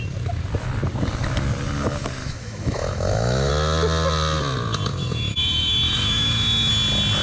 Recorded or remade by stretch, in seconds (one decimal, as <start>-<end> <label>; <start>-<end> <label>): 0.0-2.2 recorded; 2.2-3.5 remade; 3.5-4.9 recorded; 4.9-6.7 remade; 6.7-7.2 recorded